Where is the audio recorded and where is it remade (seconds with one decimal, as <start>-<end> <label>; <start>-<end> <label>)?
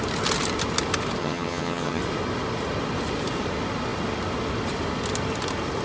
0.0-1.2 recorded; 1.2-2.0 remade; 2.0-5.8 recorded